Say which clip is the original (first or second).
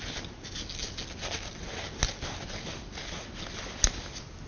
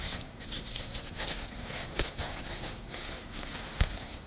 first